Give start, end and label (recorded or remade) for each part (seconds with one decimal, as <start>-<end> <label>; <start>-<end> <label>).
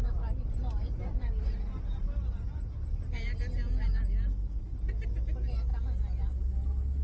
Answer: 0.0-7.0 recorded